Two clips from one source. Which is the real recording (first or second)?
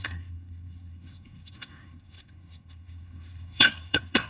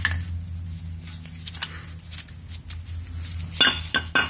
second